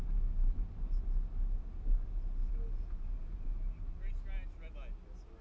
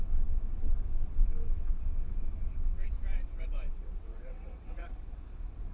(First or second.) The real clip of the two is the first